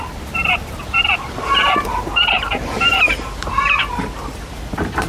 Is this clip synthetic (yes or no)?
no